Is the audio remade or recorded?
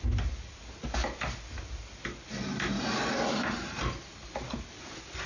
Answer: recorded